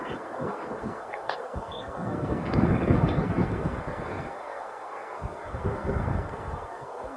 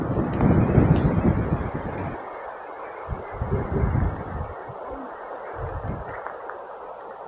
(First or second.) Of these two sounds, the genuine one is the second